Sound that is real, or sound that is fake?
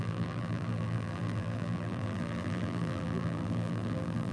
fake